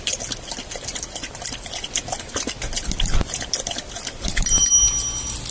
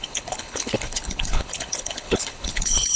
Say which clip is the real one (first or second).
first